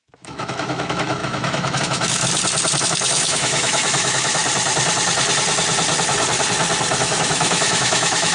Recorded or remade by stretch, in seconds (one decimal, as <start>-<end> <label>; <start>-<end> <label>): 0.0-2.2 remade; 2.2-2.8 recorded; 2.8-4.4 remade; 4.4-7.0 recorded; 7.0-8.3 remade